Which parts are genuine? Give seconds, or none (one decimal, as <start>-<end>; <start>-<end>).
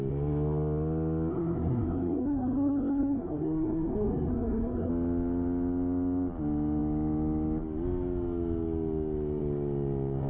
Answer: 0.0-1.3; 4.9-10.3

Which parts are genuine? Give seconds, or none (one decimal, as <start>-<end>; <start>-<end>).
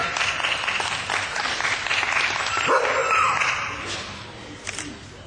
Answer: 0.0-5.3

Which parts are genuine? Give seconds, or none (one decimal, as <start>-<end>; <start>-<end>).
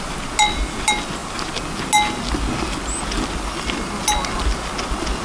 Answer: 0.0-5.2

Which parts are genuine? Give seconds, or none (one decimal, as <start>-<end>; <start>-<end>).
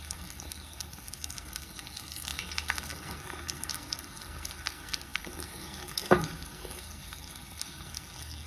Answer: none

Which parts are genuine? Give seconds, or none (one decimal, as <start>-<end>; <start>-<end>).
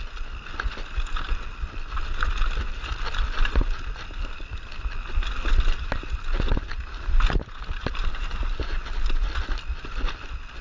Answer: 0.0-7.8; 8.4-10.6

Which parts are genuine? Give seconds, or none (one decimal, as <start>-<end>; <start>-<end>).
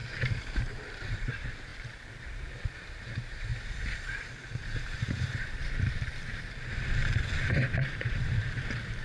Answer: 0.0-0.6; 1.7-2.6; 3.5-4.8